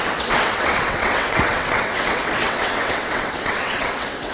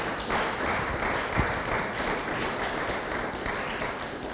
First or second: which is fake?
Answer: first